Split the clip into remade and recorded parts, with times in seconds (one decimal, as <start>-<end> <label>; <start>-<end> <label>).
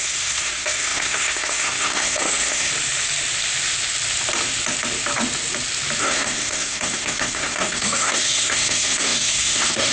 0.0-2.7 remade; 2.7-6.0 recorded; 6.0-9.9 remade